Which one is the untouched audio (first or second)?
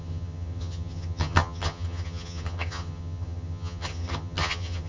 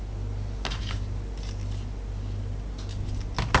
second